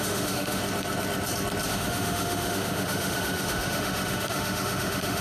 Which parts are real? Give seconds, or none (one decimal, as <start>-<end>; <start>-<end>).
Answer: 0.6-1.7